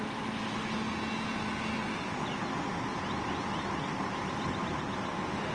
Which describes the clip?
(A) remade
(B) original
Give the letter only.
B